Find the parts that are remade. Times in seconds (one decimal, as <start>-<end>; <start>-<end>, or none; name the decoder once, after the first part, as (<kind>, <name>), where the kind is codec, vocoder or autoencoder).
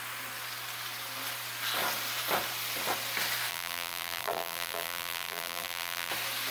3.5-6.1 (vocoder, BigVGAN v2)